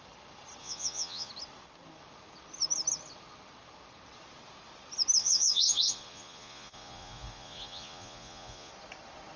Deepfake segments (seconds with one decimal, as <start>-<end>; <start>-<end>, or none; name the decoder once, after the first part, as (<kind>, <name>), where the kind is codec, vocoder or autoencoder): 0.6-1.3 (vocoder, Vocos); 5.2-8.7